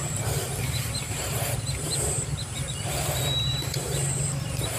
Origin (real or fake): fake